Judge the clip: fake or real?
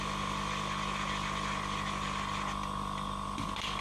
fake